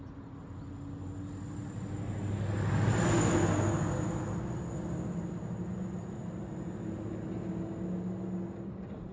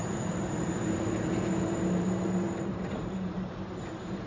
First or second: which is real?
first